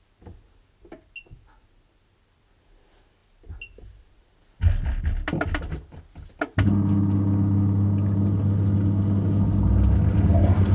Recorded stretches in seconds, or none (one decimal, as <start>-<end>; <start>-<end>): 0.0-10.7